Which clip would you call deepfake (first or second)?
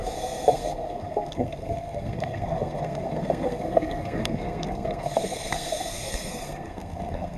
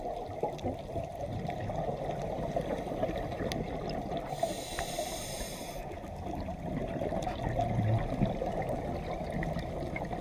first